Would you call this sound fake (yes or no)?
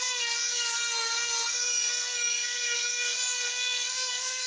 yes